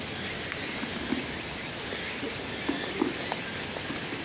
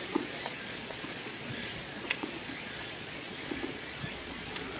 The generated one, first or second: second